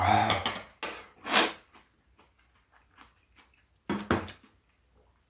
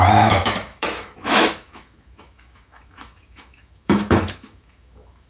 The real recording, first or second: first